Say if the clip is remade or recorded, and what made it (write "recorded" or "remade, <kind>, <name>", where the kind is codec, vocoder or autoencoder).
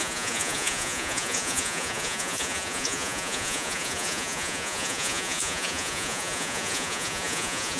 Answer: remade, vocoder, Vocos